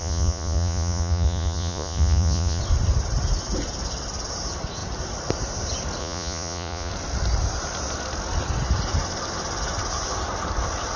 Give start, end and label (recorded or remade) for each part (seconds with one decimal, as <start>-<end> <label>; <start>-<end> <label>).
0.0-2.6 remade; 2.6-6.0 recorded; 6.0-6.9 remade; 6.9-11.0 recorded